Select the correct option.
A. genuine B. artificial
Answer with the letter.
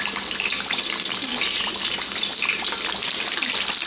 B